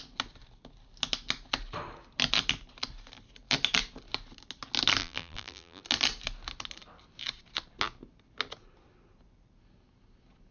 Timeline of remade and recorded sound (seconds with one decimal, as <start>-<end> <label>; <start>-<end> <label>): 0.0-5.0 recorded; 5.0-5.8 remade; 5.8-10.5 recorded